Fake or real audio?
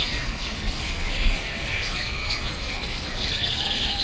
fake